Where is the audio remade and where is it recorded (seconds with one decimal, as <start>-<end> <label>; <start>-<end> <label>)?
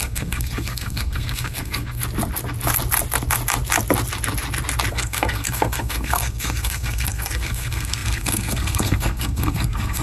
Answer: 0.0-2.0 remade; 2.0-4.9 recorded; 4.9-10.0 remade